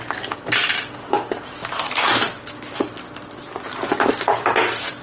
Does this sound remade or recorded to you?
recorded